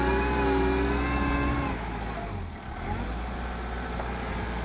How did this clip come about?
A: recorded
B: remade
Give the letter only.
A